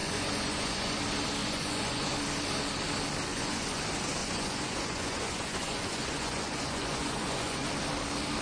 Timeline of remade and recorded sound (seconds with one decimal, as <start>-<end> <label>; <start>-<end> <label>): 0.0-1.0 remade; 1.0-1.4 recorded; 1.4-2.1 remade; 2.1-3.3 recorded; 3.3-3.8 remade; 3.8-4.2 recorded; 4.2-7.7 remade; 7.7-8.4 recorded